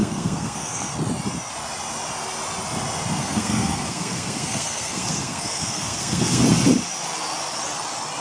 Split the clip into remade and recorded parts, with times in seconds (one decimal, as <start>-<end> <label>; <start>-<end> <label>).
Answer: 0.0-0.9 remade; 0.9-3.2 recorded; 3.2-6.4 remade; 6.4-8.2 recorded

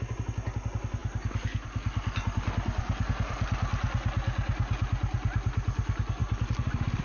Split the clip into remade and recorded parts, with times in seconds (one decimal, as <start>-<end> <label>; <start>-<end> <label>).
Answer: 0.0-7.0 recorded